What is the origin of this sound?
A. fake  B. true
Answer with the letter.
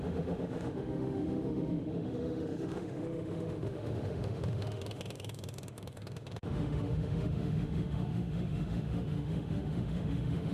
A